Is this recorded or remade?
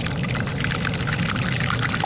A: recorded